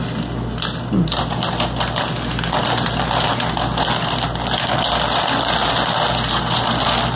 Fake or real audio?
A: real